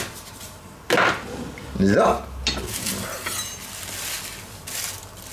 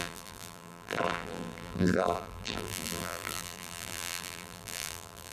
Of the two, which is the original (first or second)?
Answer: first